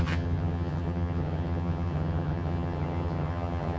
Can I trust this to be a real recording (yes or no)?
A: no